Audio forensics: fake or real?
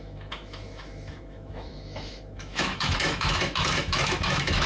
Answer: fake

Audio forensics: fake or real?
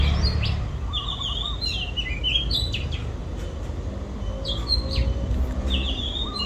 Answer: real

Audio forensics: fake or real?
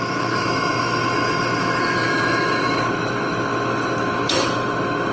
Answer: fake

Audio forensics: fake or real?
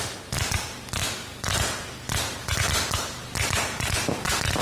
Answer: real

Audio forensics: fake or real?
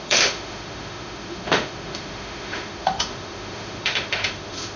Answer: fake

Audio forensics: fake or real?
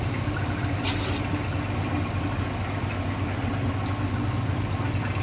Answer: real